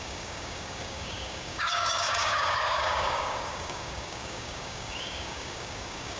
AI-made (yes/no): yes